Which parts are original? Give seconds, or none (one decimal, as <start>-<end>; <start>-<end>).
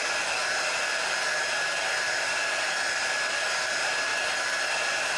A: 0.0-5.2